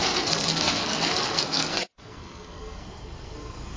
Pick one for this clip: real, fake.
fake